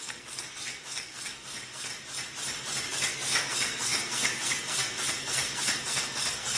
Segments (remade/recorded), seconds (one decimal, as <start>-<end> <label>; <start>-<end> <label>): 0.0-1.9 remade; 1.9-2.9 recorded; 2.9-6.6 remade